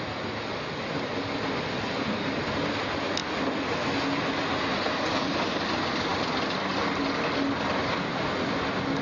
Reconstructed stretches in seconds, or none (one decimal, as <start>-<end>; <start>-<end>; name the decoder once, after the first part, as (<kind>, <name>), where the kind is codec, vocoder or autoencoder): none